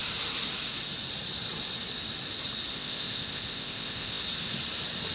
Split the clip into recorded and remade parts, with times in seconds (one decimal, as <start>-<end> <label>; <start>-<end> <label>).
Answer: 0.0-2.7 recorded; 2.7-4.2 remade; 4.2-5.1 recorded